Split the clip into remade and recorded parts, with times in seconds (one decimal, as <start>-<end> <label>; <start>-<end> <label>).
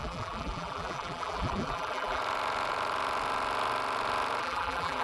0.0-2.2 remade; 2.2-4.4 recorded; 4.4-5.0 remade